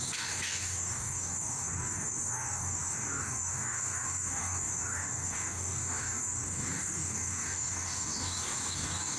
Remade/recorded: remade